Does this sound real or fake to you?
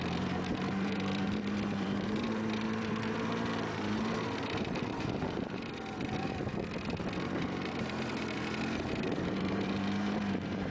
fake